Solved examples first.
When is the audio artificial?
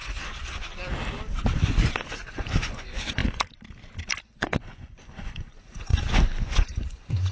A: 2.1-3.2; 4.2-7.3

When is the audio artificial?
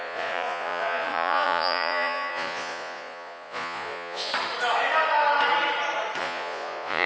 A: 0.0-4.3; 6.2-7.1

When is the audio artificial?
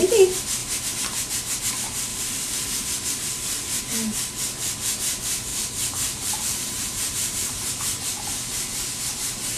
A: 2.1-3.8; 5.5-7.7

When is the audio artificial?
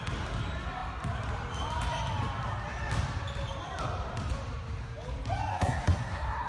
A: 5.5-6.5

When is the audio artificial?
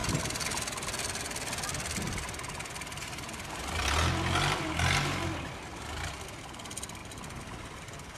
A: none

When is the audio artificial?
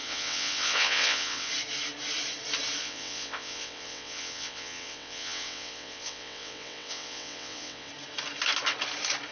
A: 0.0-1.5; 2.8-7.9